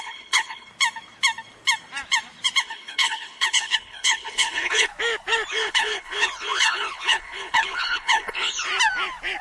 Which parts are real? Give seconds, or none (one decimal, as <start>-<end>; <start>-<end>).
0.7-2.6; 4.9-5.5; 8.7-9.4